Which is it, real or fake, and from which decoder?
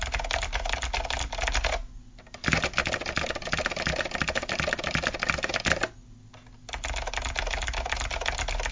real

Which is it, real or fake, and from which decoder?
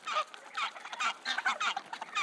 real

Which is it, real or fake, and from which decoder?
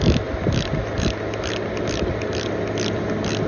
real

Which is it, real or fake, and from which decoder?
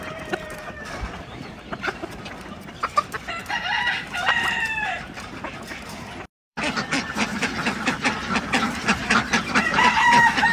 fake, vocoder, BigVGAN v2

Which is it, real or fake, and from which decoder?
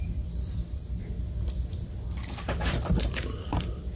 fake, vocoder, BigVGAN v2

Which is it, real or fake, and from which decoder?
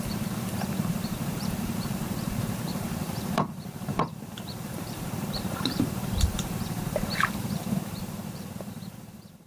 fake, vocoder, BigVGAN v2